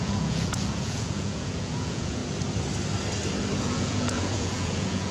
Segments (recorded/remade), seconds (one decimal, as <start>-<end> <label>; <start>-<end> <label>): 0.0-2.2 remade; 2.2-3.6 recorded; 3.6-5.1 remade